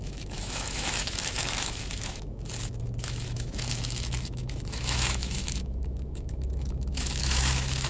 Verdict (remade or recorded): remade